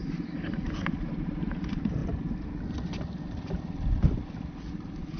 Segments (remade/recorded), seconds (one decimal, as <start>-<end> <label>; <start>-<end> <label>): 0.0-2.0 remade; 2.0-5.2 recorded